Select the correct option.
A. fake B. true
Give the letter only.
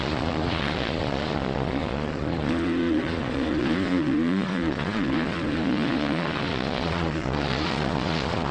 A